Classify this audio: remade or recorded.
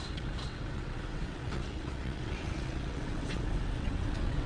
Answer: remade